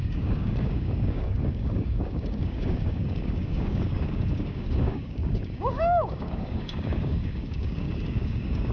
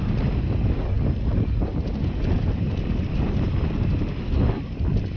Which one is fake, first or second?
first